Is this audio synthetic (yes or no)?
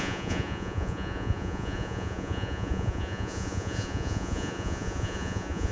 yes